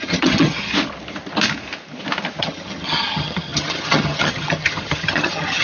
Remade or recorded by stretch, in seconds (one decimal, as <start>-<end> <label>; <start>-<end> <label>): 0.0-0.7 remade; 0.7-2.4 recorded; 2.4-5.6 remade